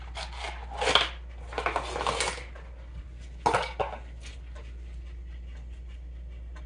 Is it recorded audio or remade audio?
recorded